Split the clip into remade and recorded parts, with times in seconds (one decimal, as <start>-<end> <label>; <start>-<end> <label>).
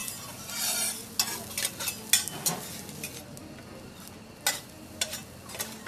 0.0-5.9 recorded